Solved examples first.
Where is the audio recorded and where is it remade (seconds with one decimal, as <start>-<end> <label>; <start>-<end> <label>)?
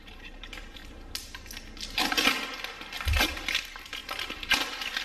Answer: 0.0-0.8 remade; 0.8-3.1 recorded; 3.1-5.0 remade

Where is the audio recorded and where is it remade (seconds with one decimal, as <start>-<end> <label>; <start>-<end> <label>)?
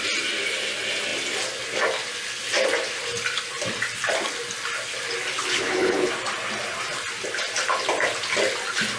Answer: 0.0-5.4 recorded; 5.4-6.1 remade; 6.1-9.0 recorded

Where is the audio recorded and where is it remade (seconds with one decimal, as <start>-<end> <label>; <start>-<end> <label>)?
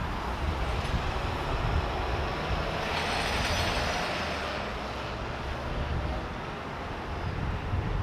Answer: 0.0-8.0 recorded